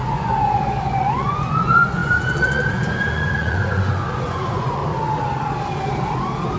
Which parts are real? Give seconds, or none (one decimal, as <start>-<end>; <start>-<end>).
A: 4.8-6.6